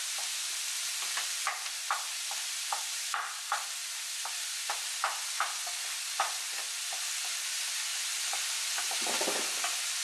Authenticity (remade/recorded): recorded